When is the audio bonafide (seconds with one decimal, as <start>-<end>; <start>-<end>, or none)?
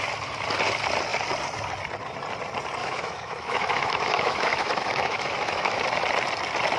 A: 0.0-2.8; 5.8-6.8